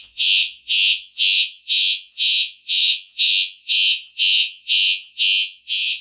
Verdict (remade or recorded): remade